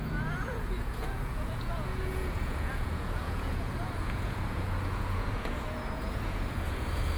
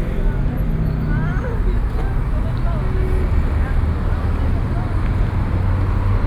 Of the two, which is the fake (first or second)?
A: first